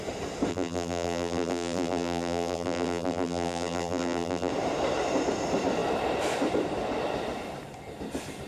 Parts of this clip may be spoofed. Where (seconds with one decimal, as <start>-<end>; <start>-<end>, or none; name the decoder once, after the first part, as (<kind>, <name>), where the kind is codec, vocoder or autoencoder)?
0.5-4.5 (vocoder, BigVGAN v2)